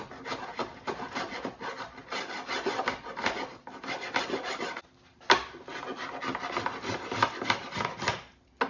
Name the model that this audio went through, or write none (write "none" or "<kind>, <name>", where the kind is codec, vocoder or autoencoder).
none